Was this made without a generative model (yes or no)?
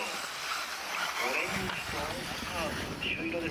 yes